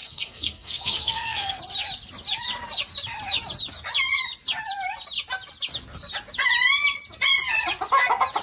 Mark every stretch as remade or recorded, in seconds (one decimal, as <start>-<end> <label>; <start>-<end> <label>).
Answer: 0.0-1.6 remade; 1.6-8.4 recorded